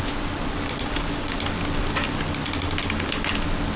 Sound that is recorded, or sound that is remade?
recorded